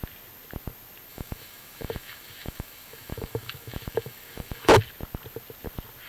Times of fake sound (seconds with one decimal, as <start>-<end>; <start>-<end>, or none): 1.1-4.8